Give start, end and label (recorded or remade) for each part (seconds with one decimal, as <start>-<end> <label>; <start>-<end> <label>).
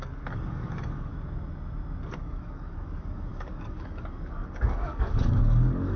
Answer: 0.0-1.1 remade; 1.1-2.0 recorded; 2.0-6.0 remade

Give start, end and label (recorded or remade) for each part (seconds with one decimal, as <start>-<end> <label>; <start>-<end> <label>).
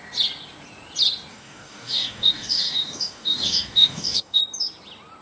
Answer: 0.0-1.3 recorded; 1.3-4.4 remade; 4.4-5.2 recorded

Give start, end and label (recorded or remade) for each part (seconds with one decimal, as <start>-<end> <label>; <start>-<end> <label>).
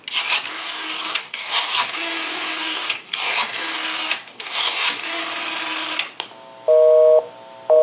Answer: 0.0-0.5 recorded; 0.5-5.2 remade; 5.2-7.8 recorded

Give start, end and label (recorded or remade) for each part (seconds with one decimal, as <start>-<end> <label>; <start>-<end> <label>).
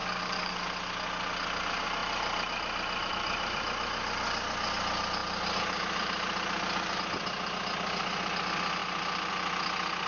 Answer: 0.0-0.6 remade; 0.6-10.1 recorded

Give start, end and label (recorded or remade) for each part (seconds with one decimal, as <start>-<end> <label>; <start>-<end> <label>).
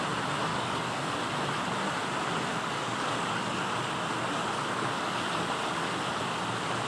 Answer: 0.0-0.5 recorded; 0.5-1.0 remade; 1.0-2.5 recorded; 2.5-3.6 remade; 3.6-4.4 recorded; 4.4-5.2 remade; 5.2-6.9 recorded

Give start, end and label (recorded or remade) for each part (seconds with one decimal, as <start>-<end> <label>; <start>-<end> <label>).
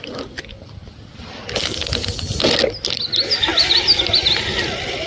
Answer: 0.0-5.1 recorded